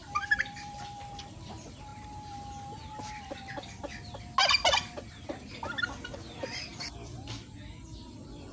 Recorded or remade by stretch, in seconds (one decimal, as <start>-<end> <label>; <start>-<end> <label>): 0.0-1.9 remade; 1.9-5.8 recorded; 5.8-8.5 remade